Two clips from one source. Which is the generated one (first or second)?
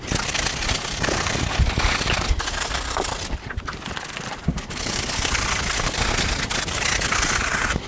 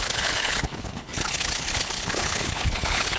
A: second